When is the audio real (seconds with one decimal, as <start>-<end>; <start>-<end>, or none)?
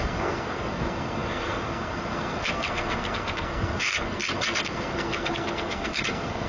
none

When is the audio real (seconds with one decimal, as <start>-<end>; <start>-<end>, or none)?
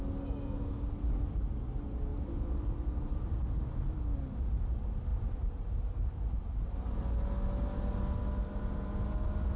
0.0-9.6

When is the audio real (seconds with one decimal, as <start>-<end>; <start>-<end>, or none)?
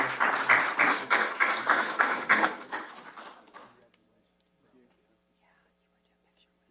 0.0-0.9; 2.9-6.7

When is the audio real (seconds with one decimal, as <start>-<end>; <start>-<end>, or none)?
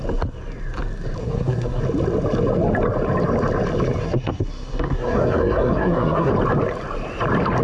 0.0-1.2; 1.8-4.0; 6.3-7.6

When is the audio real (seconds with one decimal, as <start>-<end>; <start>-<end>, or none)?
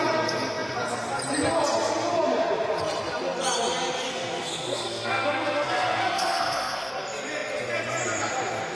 0.0-4.1; 6.9-8.7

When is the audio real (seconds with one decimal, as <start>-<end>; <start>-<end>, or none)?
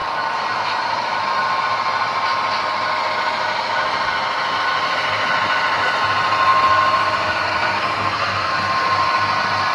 0.0-7.4; 8.5-9.7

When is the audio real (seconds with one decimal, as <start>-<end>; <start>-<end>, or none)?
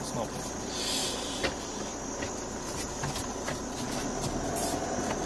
0.0-5.3